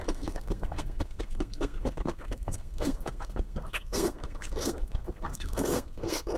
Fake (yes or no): yes